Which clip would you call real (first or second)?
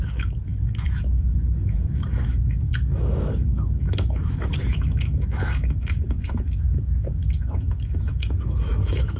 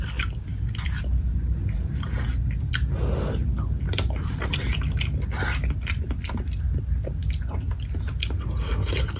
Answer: second